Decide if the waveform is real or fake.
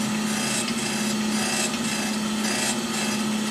real